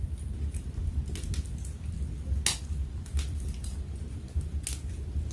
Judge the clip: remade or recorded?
recorded